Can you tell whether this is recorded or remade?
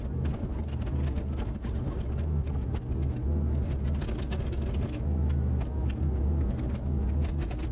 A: recorded